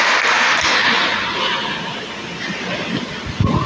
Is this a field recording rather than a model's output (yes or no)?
yes